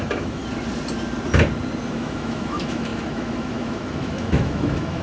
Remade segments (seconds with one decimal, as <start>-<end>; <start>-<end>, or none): 0.0-0.4; 1.8-5.0